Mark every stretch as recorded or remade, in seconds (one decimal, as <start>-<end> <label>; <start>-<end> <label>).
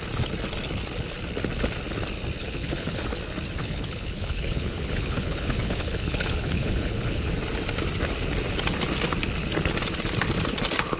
0.0-2.4 recorded; 2.4-3.0 remade; 3.0-3.6 recorded; 3.6-7.3 remade; 7.3-11.0 recorded